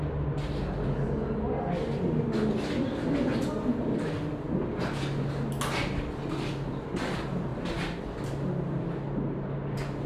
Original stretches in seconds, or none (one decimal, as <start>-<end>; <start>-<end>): 0.0-10.1